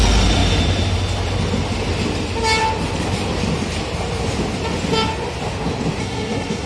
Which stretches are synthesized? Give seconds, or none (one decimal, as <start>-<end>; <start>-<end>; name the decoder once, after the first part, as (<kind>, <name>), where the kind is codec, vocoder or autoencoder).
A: 6.0-6.7 (codec, SNAC)